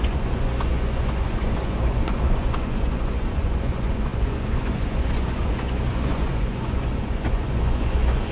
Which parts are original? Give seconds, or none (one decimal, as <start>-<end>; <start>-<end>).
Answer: none